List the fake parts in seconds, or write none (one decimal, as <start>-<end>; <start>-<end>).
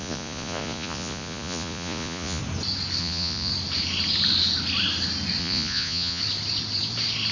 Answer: 0.0-2.4; 3.0-3.5; 5.4-6.2